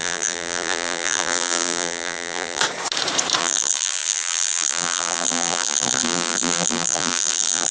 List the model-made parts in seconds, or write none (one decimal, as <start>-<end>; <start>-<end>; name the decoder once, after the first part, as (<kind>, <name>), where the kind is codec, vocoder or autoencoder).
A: 0.0-2.6 (vocoder, BigVGAN v2); 3.4-7.7